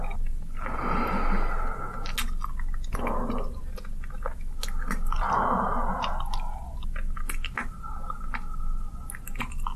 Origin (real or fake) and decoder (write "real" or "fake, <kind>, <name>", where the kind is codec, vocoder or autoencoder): real